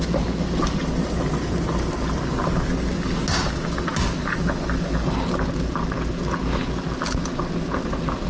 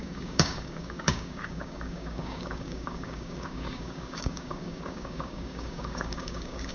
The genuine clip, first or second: first